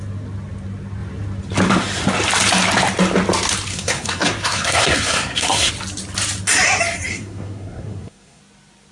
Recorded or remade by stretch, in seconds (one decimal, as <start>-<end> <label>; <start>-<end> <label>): 0.0-3.7 recorded; 3.7-5.7 remade; 5.7-7.1 recorded; 7.1-8.4 remade; 8.4-8.9 recorded